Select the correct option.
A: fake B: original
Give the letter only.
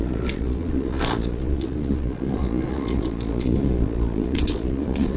A